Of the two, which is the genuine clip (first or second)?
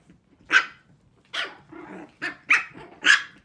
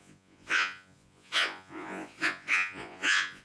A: first